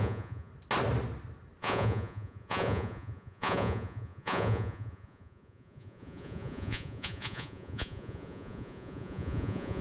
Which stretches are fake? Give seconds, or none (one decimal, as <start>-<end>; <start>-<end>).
0.0-0.5; 1.6-9.8